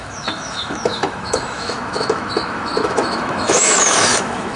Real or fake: fake